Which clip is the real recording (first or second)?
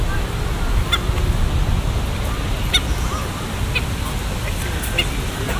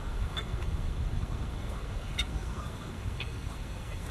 first